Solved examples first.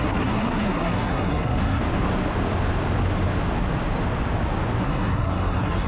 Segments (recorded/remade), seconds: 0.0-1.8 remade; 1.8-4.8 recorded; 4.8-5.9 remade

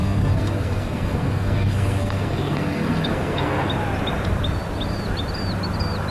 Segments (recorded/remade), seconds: 0.0-3.7 remade; 3.7-6.1 recorded

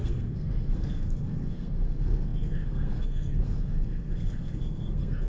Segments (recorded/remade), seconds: 0.0-5.3 remade

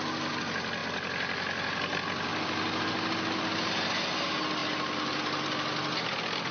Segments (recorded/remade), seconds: 0.0-6.5 recorded

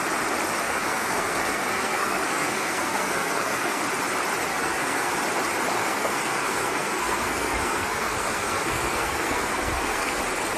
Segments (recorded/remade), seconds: 0.0-0.6 recorded; 0.6-3.8 remade; 3.8-4.5 recorded; 4.5-5.1 remade; 5.1-5.8 recorded; 5.8-10.2 remade; 10.2-10.6 recorded

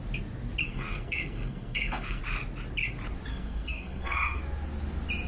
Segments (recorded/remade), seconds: 0.0-0.6 recorded; 0.6-2.2 remade; 2.2-3.3 recorded; 3.3-4.4 remade; 4.4-5.3 recorded

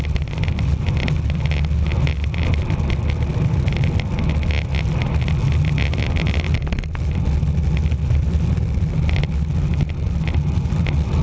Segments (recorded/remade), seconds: 0.0-11.2 recorded